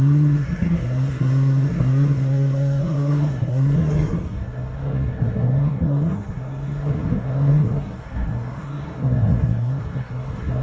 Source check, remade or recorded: remade